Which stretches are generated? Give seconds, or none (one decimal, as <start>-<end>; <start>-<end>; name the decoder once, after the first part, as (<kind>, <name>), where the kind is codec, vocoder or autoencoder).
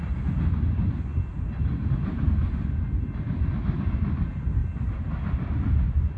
none